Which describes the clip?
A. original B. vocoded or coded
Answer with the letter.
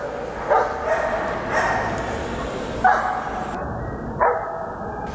A